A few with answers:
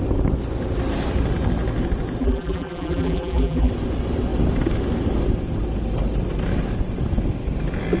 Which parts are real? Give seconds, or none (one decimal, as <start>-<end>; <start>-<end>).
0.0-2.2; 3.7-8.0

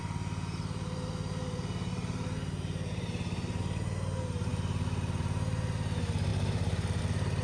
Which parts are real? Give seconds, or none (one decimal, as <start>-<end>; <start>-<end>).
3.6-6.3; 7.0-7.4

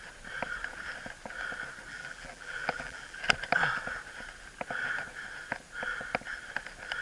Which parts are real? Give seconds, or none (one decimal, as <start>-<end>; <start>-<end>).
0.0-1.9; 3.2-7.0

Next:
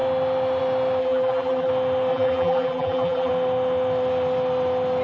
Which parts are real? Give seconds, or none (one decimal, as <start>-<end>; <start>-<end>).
0.0-1.0; 1.7-2.1; 3.3-5.0

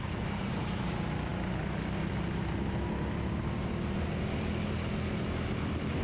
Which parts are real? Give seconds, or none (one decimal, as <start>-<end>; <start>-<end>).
0.0-6.0

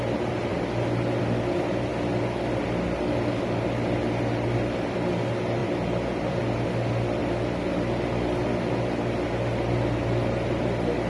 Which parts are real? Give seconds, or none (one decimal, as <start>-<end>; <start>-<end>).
0.0-5.6; 6.4-11.1

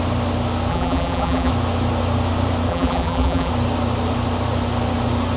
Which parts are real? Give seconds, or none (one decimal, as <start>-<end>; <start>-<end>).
0.0-0.7; 1.5-2.7; 3.5-5.4

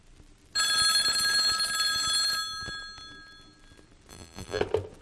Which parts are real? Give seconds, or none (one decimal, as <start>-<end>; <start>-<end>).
0.0-4.1; 4.6-5.0